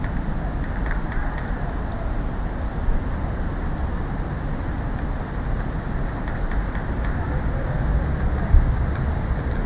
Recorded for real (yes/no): yes